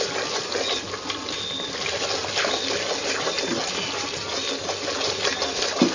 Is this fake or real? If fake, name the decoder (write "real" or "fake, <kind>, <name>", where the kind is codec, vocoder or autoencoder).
real